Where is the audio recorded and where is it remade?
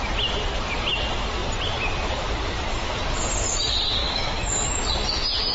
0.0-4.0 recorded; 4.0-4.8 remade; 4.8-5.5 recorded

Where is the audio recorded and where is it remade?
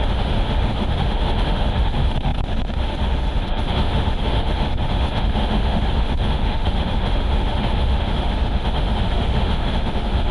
0.0-10.3 remade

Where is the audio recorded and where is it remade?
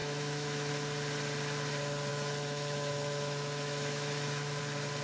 0.0-0.7 remade; 0.7-2.1 recorded; 2.1-4.6 remade; 4.6-5.0 recorded